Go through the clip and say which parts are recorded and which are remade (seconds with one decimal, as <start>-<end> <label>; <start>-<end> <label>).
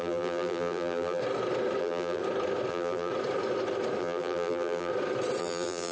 0.0-1.2 remade; 1.2-1.8 recorded; 1.8-2.2 remade; 2.2-2.7 recorded; 2.7-3.1 remade; 3.1-4.0 recorded; 4.0-4.9 remade; 4.9-5.4 recorded; 5.4-5.9 remade